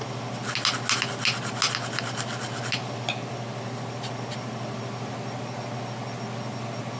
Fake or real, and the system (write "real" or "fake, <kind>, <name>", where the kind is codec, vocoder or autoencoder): real